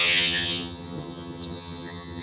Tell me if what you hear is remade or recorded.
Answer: remade